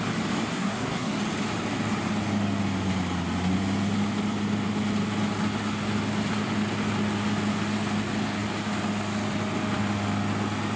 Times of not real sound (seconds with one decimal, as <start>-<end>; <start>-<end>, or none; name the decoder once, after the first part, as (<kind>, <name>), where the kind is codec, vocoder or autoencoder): 0.5-1.2 (codec, SNAC)